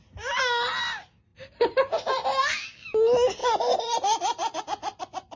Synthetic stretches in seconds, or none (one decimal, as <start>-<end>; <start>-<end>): 1.3-2.5; 3.4-4.6